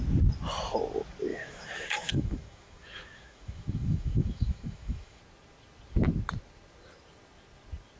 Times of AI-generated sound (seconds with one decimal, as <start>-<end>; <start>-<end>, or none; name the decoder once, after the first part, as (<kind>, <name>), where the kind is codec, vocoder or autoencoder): 1.3-5.2 (autoencoder, DAC-VAE)